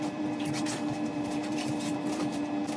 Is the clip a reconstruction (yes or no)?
yes